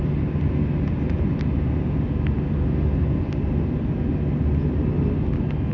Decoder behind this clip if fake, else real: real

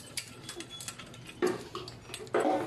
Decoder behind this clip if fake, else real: real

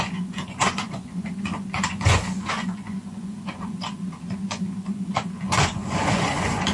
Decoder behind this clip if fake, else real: fake, vocoder, Vocos